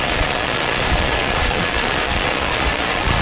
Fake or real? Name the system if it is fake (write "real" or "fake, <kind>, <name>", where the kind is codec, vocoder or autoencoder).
fake, vocoder, Vocos